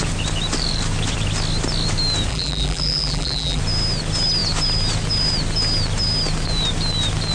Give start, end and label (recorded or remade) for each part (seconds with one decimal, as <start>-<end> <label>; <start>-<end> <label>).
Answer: 0.0-2.3 recorded; 2.3-3.6 remade; 3.6-7.3 recorded